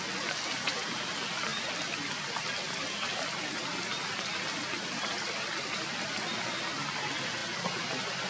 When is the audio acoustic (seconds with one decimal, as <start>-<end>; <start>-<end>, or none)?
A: 0.0-8.3